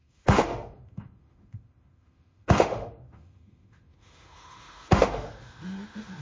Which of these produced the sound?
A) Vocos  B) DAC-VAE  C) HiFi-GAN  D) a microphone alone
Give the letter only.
B